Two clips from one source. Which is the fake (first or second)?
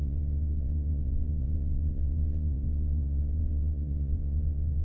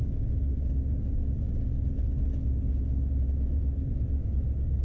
first